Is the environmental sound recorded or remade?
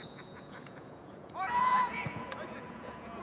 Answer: remade